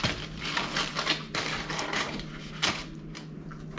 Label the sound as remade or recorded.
recorded